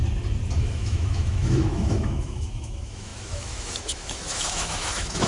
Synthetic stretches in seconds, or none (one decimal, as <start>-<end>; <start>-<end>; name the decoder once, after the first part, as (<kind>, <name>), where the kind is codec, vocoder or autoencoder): 0.6-5.3 (autoencoder, DAC-VAE)